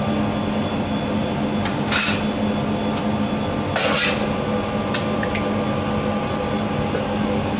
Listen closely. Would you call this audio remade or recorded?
recorded